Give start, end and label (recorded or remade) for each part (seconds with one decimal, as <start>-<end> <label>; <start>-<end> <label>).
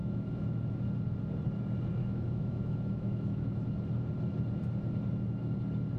0.0-0.6 remade; 0.6-2.0 recorded; 2.0-3.6 remade; 3.6-6.0 recorded